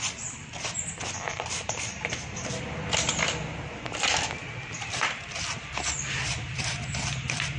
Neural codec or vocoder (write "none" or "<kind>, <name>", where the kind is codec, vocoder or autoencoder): vocoder, BigVGAN v2